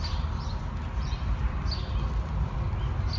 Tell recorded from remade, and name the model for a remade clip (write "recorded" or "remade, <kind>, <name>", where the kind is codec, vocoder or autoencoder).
recorded